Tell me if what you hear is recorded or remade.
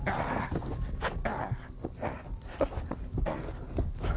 recorded